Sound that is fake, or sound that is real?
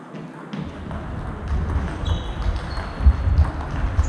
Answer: real